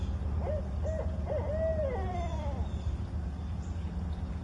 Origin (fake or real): real